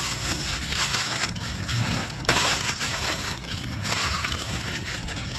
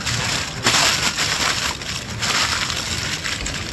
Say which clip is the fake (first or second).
first